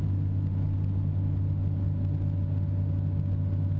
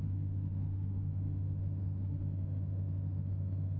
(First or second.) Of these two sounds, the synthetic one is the second